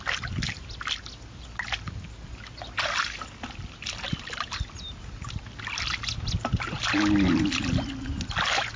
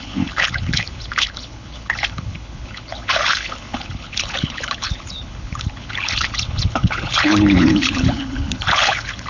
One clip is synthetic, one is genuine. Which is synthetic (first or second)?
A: second